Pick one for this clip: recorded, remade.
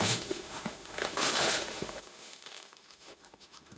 remade